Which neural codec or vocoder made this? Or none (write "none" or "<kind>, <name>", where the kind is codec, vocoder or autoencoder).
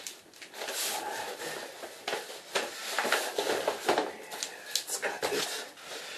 none